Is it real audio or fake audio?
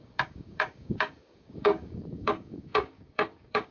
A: fake